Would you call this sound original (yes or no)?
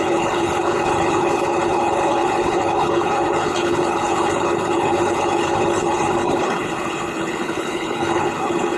no